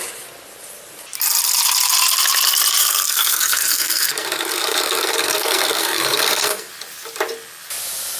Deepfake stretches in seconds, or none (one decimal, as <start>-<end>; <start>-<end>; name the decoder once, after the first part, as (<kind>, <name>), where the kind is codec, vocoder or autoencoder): 2.8-6.7 (codec, SNAC)